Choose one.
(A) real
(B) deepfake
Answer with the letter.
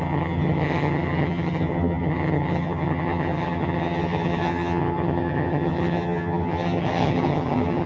B